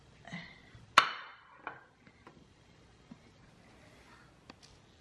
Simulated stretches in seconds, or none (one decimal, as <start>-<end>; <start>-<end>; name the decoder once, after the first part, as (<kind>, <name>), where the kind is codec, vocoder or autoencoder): none